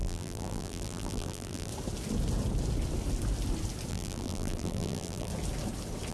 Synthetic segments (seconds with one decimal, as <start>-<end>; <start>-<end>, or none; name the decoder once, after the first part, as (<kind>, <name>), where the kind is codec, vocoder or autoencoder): 0.0-1.7 (vocoder, BigVGAN v2); 3.9-5.3